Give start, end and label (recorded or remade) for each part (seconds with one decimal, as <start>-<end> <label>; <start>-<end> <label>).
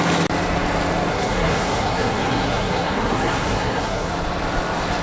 0.0-1.1 recorded; 1.1-4.1 remade; 4.1-5.0 recorded